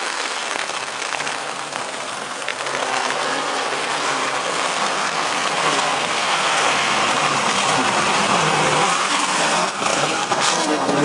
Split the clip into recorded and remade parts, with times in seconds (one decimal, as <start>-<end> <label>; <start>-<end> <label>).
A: 0.0-7.0 remade; 7.0-9.1 recorded; 9.1-11.0 remade